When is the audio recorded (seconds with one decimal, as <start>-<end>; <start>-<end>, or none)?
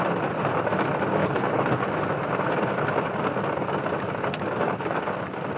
0.0-1.2; 1.9-5.6